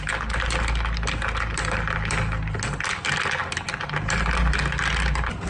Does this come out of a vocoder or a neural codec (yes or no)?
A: no